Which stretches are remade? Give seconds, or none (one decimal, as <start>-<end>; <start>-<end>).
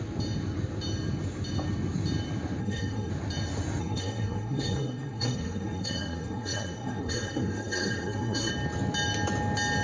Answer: 2.6-3.1; 3.8-8.5